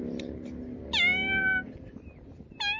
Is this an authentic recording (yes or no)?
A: yes